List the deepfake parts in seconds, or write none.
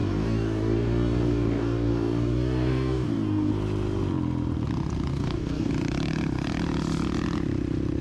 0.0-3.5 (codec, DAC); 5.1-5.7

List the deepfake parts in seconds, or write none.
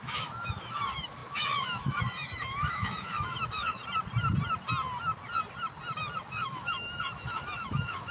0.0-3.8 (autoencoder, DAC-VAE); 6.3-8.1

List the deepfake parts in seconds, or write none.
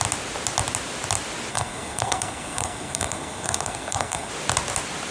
1.5-4.3 (codec, SNAC)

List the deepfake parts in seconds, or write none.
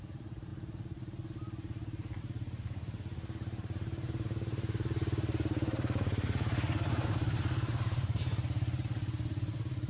0.0-0.5 (vocoder, BigVGAN v2); 2.2-9.9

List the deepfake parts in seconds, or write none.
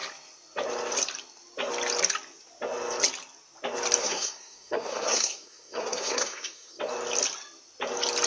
4.0-6.8 (codec, SNAC)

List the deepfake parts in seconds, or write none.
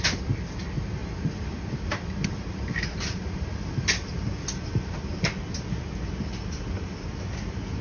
none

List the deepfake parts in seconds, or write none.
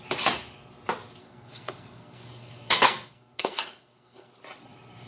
1.2-4.3 (codec, SNAC)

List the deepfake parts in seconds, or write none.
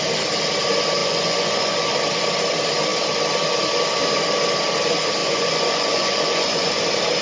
1.0-1.9 (vocoder, Vocos); 5.2-6.8